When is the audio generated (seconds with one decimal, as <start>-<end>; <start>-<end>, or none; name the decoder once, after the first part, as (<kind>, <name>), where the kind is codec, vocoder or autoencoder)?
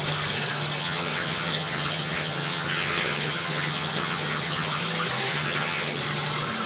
0.8-4.8 (vocoder, HiFi-GAN); 5.3-6.0